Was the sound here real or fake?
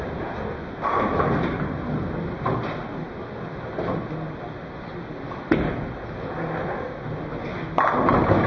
real